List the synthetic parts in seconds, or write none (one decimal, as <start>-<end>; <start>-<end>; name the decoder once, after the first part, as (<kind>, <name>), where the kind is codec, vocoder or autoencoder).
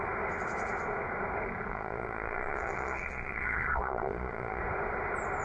1.7-4.6 (vocoder, Vocos)